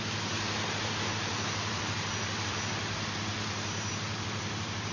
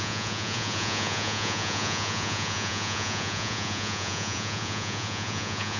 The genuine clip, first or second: first